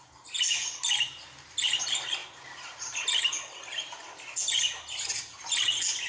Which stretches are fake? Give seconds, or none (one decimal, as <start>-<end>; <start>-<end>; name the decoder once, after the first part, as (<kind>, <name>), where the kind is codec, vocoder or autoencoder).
none